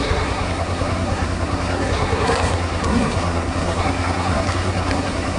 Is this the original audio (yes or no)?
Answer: no